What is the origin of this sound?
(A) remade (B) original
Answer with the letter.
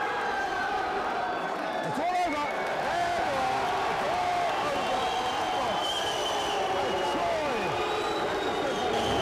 B